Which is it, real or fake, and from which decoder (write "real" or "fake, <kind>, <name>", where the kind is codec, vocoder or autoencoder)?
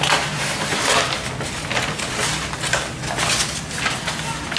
real